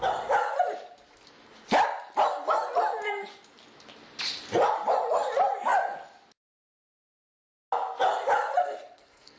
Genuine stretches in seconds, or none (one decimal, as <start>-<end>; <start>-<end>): 0.0-8.6